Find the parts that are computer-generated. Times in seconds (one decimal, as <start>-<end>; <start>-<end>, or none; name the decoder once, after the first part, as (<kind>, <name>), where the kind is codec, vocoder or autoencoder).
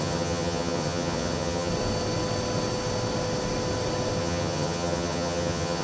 0.0-1.7 (vocoder, HiFi-GAN); 4.2-5.8